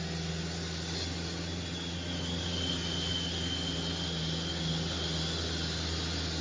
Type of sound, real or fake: real